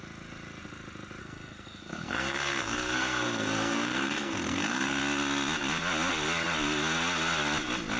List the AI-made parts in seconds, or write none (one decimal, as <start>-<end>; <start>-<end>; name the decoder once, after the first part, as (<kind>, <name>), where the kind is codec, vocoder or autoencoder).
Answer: 1.2-5.0 (codec, SNAC)